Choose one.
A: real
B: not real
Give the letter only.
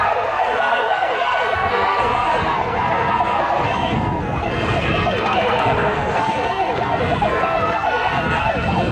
B